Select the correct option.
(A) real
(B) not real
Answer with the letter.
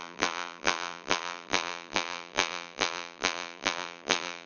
B